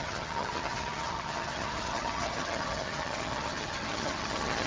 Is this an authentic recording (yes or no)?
no